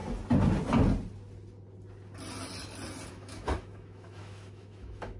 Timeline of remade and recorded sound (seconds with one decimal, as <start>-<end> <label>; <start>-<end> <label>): 0.0-3.1 recorded; 3.1-5.2 remade